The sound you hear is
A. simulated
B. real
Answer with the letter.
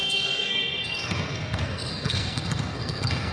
A